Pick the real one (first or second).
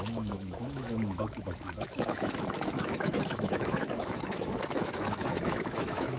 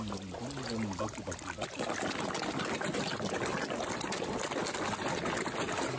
second